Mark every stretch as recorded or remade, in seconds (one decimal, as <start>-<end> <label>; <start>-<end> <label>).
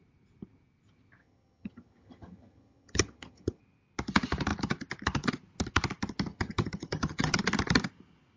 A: 0.0-1.2 recorded; 1.2-3.6 remade; 3.6-6.3 recorded; 6.3-7.4 remade; 7.4-8.4 recorded